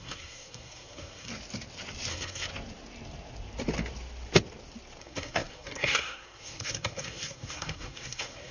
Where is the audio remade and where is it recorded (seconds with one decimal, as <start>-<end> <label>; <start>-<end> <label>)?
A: 0.0-1.3 remade; 1.3-2.1 recorded; 2.1-2.5 remade; 2.5-5.0 recorded; 5.0-8.5 remade